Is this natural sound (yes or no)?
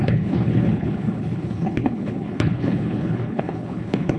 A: no